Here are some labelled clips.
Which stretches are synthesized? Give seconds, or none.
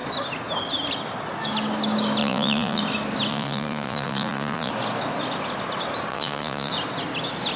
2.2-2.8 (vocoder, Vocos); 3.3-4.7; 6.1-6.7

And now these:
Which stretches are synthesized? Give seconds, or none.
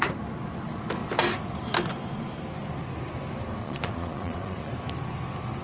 3.6-4.7 (vocoder, Vocos)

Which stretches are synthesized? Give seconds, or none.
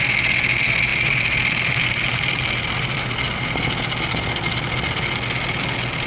none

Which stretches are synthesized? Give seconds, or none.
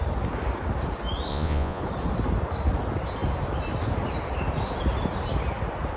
1.3-1.8 (vocoder, Vocos)